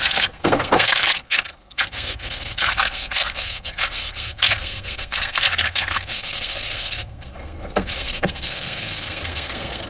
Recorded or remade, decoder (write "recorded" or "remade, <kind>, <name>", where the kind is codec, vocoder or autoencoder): remade, codec, SNAC